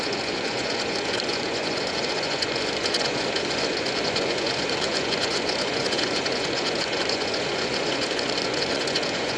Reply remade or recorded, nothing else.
remade